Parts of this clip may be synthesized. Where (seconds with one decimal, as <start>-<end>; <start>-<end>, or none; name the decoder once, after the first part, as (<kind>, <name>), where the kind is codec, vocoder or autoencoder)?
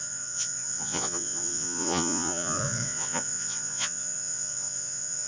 0.0-5.3 (vocoder, Vocos)